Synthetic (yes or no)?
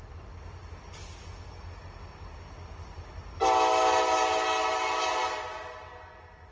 no